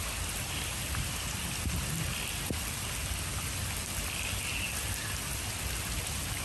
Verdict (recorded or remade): recorded